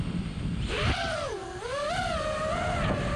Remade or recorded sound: recorded